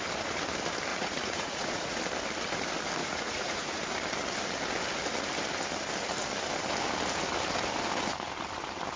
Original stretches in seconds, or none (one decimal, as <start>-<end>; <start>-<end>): 0.0-0.9; 2.0-3.0; 3.8-9.0